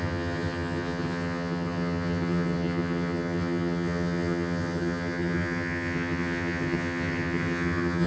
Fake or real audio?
fake